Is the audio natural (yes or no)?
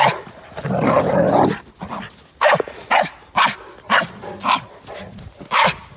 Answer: yes